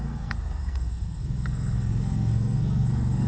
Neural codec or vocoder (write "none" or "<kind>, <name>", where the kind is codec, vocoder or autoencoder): codec, SNAC